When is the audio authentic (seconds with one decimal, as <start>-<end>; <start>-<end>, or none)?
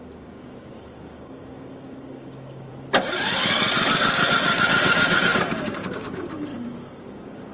2.7-3.9